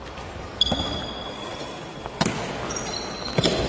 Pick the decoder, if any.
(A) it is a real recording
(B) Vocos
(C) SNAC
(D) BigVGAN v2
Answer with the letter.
D